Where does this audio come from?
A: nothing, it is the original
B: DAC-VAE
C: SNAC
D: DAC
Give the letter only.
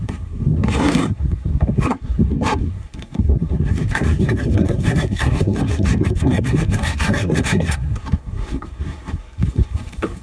C